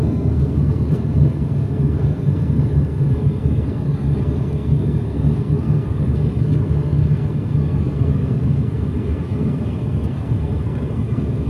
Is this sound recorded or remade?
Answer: remade